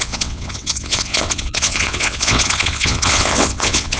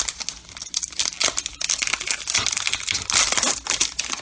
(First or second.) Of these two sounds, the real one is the second